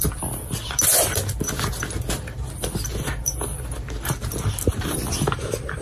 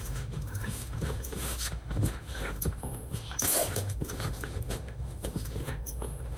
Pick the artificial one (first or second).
second